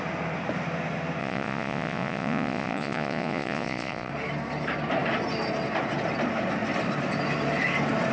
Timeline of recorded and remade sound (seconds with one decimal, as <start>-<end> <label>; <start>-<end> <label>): 0.0-1.2 recorded; 1.2-4.1 remade; 4.1-8.1 recorded

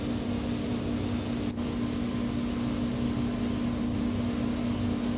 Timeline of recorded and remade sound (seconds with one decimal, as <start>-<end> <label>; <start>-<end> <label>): 0.0-5.2 recorded

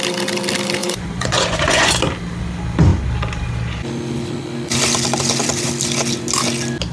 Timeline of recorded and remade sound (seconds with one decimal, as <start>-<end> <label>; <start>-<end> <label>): 0.0-0.8 recorded; 0.8-1.9 remade; 1.9-6.9 recorded

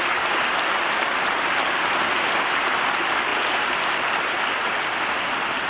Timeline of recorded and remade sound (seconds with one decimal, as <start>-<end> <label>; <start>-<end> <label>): 0.0-5.7 recorded

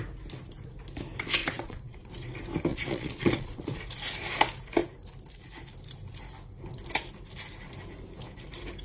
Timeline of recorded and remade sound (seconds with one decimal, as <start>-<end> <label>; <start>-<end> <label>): 0.0-1.4 recorded; 1.4-2.1 remade; 2.1-2.7 recorded; 2.7-3.8 remade; 3.8-8.8 recorded

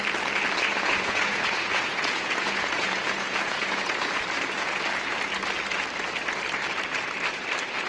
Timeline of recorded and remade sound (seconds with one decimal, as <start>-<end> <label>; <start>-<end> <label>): 0.0-0.7 recorded; 0.7-4.2 remade; 4.2-7.9 recorded